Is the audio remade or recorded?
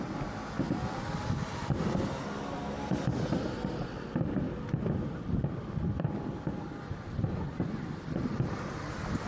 recorded